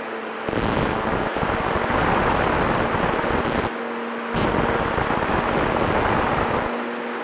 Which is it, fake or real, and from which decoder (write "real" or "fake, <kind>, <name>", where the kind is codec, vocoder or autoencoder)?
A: real